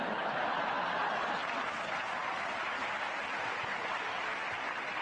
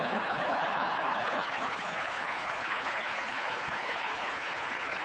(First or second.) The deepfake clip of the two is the second